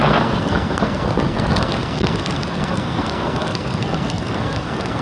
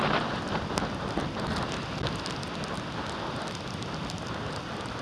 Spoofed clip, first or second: first